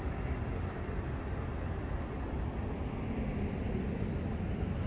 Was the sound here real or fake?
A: real